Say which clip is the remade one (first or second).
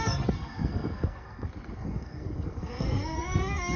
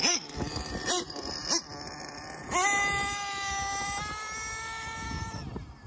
first